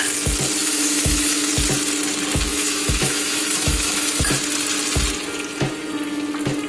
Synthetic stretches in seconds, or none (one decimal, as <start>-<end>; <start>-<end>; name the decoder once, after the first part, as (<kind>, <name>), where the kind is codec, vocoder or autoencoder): 0.6-1.5 (autoencoder, DAC-VAE); 2.5-4.3